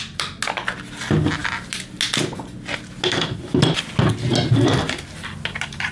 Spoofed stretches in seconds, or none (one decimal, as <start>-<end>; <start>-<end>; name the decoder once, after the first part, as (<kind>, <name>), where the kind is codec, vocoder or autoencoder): none